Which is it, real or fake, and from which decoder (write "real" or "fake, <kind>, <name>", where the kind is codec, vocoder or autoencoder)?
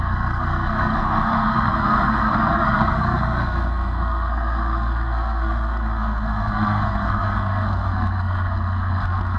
fake, codec, SNAC